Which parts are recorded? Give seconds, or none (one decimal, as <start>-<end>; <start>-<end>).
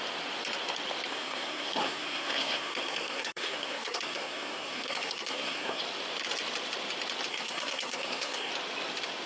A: 0.0-1.1; 5.8-7.3; 8.5-9.3